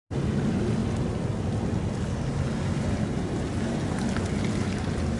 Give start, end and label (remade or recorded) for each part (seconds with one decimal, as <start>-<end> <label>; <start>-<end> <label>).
0.0-5.2 recorded